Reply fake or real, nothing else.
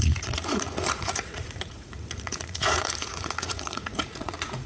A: fake